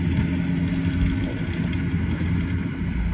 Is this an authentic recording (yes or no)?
yes